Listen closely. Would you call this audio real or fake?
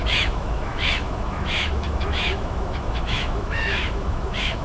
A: fake